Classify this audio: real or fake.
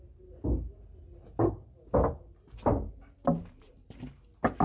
real